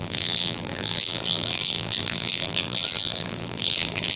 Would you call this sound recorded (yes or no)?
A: no